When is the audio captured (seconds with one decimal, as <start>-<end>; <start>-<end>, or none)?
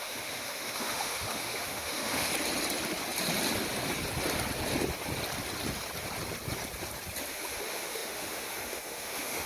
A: 2.3-7.3